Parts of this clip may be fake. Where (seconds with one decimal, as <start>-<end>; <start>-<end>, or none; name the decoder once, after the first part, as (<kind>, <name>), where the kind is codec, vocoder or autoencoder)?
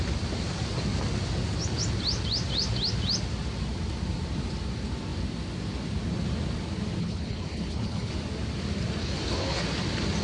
7.0-8.1 (codec, HILCodec); 9.0-9.6